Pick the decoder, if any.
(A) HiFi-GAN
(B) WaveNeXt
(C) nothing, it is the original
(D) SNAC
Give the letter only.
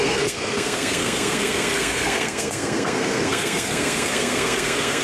D